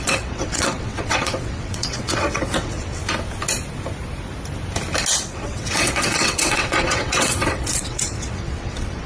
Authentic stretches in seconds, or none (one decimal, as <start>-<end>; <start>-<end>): 3.0-5.1